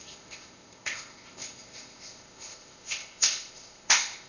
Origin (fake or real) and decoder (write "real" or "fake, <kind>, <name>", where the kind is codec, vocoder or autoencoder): fake, codec, ZipCodec